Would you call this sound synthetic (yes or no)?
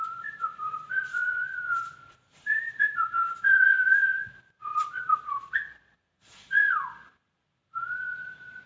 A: yes